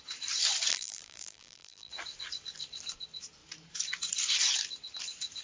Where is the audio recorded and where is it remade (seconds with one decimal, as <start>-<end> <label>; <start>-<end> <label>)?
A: 0.0-0.7 recorded; 0.7-1.9 remade; 1.9-5.4 recorded

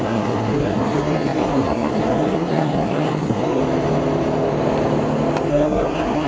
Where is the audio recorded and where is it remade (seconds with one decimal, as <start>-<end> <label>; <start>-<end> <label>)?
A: 0.0-3.6 remade; 3.6-5.5 recorded; 5.5-6.3 remade